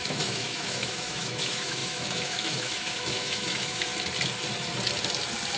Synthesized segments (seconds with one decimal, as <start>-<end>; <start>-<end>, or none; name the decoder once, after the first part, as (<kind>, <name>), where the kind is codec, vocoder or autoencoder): 0.0-3.9 (autoencoder, DAC-VAE)